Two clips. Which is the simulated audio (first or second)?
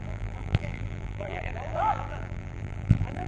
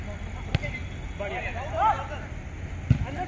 first